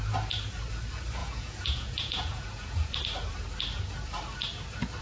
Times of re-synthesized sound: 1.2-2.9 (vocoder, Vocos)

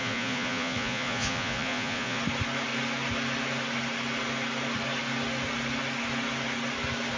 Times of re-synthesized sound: 0.0-2.2 (vocoder, Vocos)

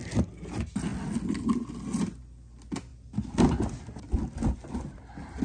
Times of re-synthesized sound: none

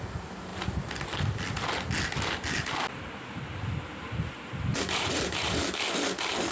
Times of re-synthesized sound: 4.7-5.7 (vocoder, BigVGAN v2)